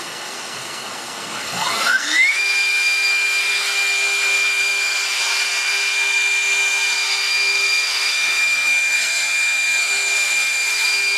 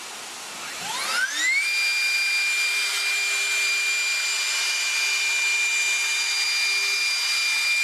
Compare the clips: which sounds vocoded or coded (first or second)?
first